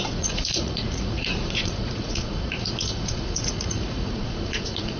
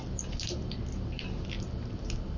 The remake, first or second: first